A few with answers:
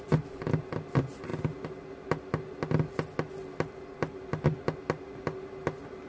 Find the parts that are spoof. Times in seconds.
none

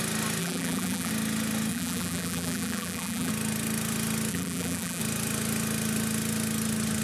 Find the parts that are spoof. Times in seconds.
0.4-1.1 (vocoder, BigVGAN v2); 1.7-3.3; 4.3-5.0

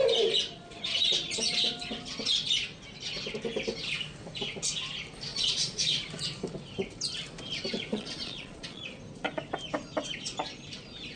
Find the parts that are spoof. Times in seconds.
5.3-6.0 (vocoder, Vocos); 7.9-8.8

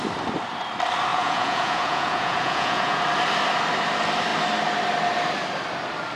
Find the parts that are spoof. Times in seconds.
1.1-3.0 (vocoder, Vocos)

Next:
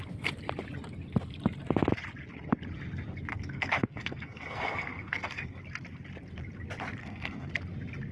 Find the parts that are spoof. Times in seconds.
3.3-5.6 (codec, SNAC); 7.0-7.5